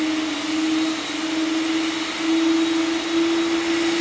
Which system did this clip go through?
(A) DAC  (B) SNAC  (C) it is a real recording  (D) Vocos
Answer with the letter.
C